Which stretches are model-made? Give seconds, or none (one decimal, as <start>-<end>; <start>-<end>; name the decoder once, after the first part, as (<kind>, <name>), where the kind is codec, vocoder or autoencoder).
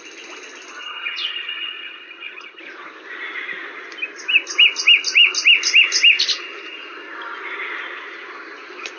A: 0.8-2.6 (vocoder, HiFi-GAN)